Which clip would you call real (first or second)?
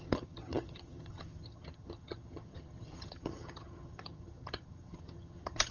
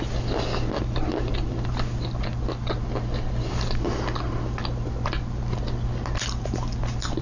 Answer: second